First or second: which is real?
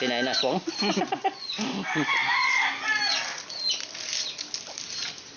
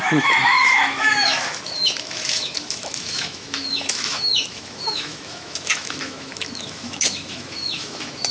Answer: first